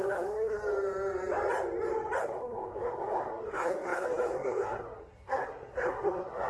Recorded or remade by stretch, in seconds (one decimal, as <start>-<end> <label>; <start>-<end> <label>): 0.0-0.6 remade; 0.6-2.2 recorded; 2.2-6.5 remade